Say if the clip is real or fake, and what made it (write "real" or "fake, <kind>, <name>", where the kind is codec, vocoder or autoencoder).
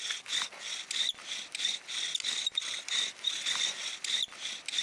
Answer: real